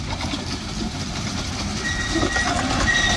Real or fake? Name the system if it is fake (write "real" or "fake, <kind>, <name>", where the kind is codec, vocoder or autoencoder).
real